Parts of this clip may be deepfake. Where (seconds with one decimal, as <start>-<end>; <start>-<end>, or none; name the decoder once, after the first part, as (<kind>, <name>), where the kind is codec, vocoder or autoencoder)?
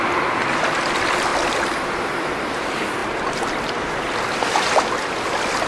0.0-5.7 (vocoder, BigVGAN v2)